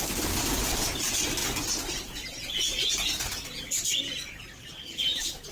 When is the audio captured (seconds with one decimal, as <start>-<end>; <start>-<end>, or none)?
0.0-5.5